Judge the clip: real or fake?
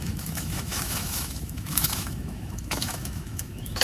fake